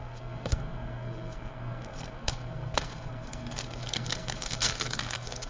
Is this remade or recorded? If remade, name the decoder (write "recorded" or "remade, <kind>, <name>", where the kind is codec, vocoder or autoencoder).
remade, codec, SNAC